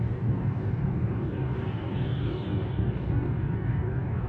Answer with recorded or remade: remade